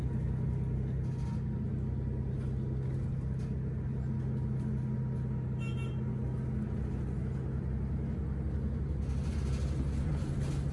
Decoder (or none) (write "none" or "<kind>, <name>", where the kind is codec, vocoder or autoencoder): none